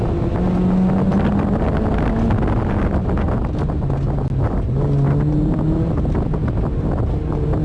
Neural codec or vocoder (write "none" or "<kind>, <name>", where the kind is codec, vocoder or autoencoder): none